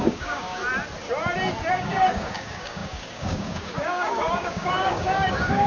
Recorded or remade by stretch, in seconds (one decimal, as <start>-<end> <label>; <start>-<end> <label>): 0.0-0.6 remade; 0.6-1.7 recorded; 1.7-5.7 remade